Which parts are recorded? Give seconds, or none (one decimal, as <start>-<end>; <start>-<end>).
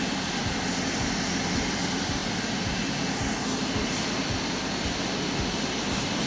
0.0-6.3